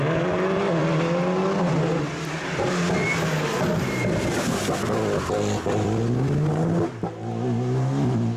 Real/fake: real